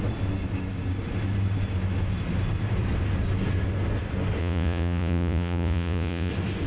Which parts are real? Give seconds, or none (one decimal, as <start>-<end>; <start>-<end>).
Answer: 0.0-4.4; 6.3-6.7